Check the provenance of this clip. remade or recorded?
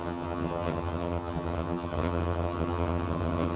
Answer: remade